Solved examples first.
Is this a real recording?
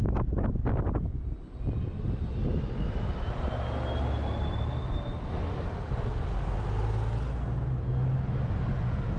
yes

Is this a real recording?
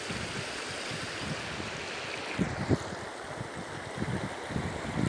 yes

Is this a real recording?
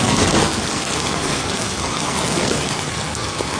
no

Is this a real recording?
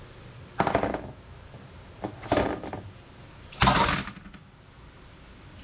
yes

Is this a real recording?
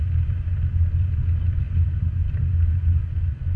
yes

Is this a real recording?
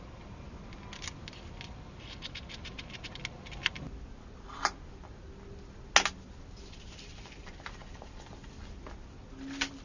yes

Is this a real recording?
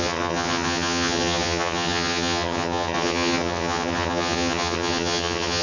no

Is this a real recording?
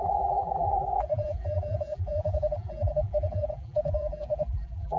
no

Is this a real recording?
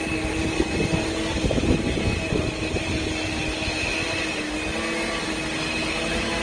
yes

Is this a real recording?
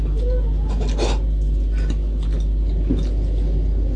yes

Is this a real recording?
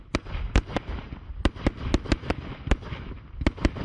yes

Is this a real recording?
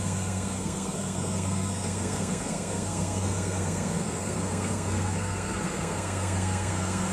no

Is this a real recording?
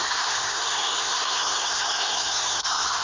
no